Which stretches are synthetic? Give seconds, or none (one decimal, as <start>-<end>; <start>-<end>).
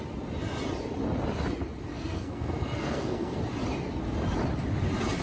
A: 1.9-3.4